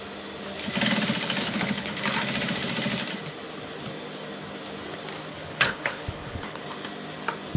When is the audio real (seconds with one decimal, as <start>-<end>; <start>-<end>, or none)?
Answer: 0.0-1.4; 2.0-5.3; 6.6-7.6